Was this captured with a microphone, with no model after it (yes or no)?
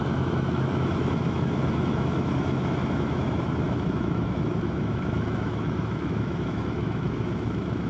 no